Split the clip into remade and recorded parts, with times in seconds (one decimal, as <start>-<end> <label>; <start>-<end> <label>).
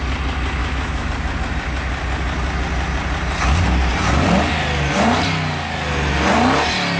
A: 0.0-0.6 recorded; 0.6-1.1 remade; 1.1-7.0 recorded